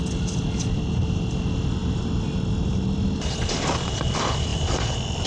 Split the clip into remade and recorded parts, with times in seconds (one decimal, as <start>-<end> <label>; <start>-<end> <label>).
0.0-4.5 recorded; 4.5-5.3 remade